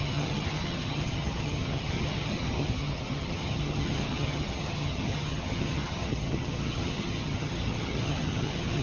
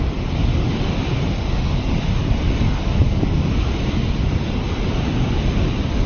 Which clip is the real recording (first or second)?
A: second